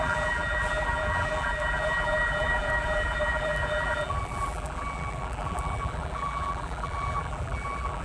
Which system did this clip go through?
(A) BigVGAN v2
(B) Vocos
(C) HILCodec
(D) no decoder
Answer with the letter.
A